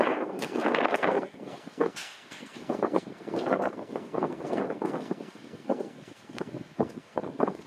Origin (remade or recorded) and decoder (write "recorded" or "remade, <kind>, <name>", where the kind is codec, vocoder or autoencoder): remade, codec, SNAC